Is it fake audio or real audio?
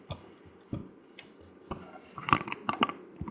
real